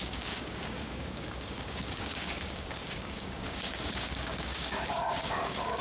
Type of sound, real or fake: fake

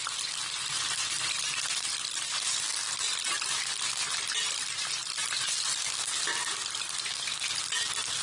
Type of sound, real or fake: real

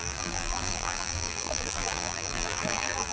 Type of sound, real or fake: fake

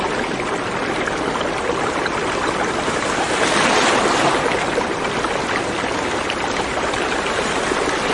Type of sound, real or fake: real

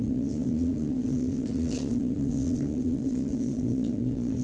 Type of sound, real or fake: fake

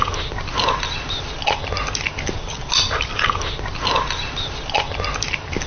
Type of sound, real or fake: real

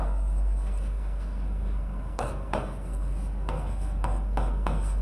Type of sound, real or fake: fake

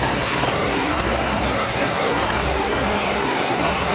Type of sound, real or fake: fake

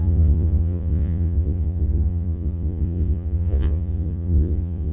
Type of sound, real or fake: fake